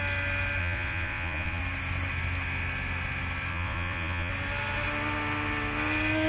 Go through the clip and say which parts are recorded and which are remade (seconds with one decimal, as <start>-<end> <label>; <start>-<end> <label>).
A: 0.0-0.6 recorded; 0.6-1.6 remade; 1.6-3.5 recorded; 3.5-4.3 remade; 4.3-6.3 recorded